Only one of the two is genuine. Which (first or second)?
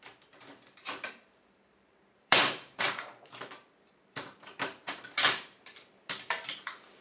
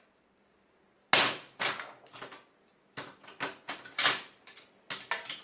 second